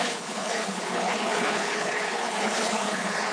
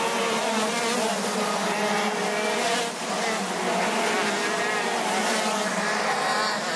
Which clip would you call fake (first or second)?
first